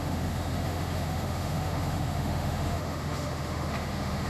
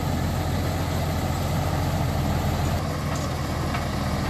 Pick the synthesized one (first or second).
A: first